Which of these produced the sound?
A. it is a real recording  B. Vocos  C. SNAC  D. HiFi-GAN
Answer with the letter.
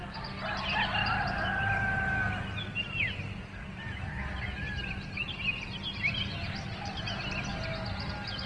A